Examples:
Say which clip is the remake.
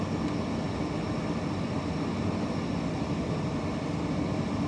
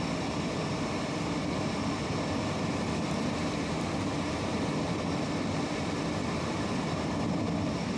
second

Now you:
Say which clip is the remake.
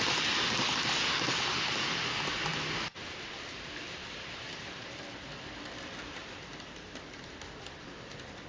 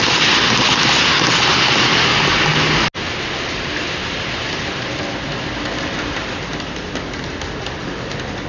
first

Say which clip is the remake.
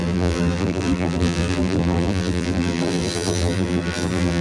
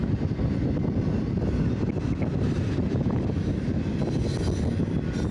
first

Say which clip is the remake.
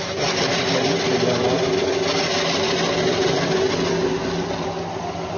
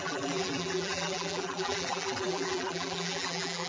second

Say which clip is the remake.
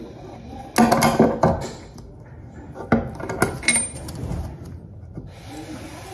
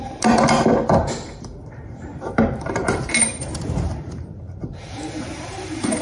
second